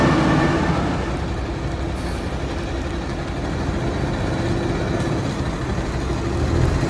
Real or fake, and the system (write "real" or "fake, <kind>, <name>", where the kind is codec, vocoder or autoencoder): real